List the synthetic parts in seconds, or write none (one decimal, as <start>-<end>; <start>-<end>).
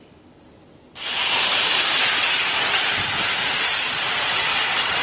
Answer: 3.7-5.0